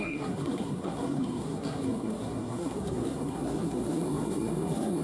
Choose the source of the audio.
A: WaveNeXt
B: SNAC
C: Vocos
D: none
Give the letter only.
B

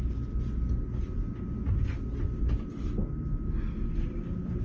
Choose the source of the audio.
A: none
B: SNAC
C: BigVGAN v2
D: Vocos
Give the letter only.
A